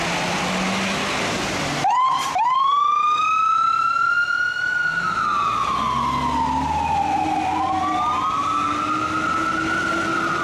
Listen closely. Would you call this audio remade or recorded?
recorded